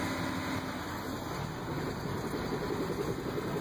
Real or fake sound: real